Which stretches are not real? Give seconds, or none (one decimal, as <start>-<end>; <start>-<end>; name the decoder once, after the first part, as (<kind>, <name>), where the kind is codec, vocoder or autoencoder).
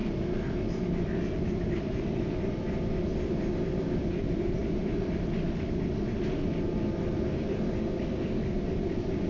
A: 1.8-9.3 (vocoder, BigVGAN v2)